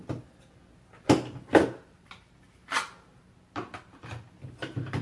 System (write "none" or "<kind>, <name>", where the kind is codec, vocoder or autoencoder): none